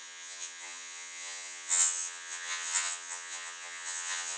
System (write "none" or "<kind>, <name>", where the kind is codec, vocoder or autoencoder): vocoder, HiFi-GAN